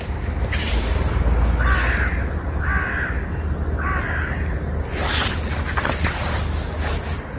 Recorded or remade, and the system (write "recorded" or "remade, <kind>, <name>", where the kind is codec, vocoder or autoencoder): recorded